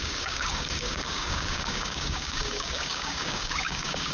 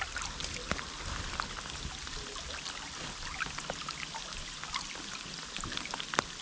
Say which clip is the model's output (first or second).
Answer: first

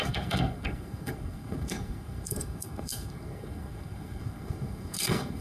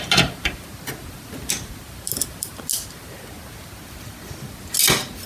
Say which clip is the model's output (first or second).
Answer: first